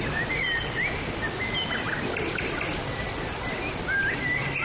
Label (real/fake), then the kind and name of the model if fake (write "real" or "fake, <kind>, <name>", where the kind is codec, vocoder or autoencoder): real